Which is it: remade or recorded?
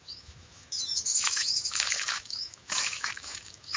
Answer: remade